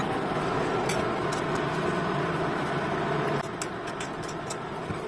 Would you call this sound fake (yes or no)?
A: no